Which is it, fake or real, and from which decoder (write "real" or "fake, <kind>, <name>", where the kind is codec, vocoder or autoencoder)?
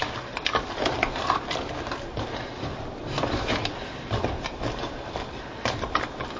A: real